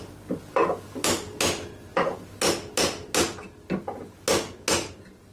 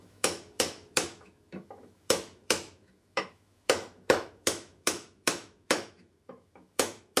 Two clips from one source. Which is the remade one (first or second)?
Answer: second